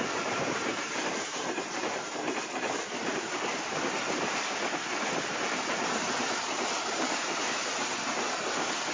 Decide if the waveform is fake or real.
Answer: fake